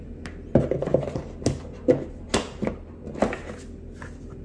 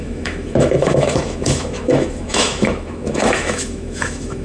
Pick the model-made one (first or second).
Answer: second